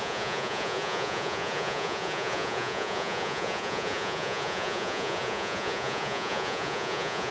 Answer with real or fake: fake